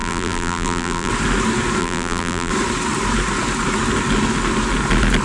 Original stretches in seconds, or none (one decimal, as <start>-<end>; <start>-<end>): 1.1-1.8; 2.5-5.2